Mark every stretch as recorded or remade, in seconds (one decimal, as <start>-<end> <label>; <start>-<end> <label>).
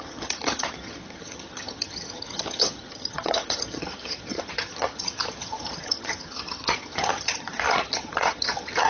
0.0-8.9 remade